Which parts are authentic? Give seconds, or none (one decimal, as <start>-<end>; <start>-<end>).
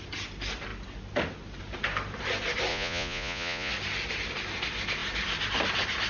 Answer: 0.0-2.7; 3.7-6.1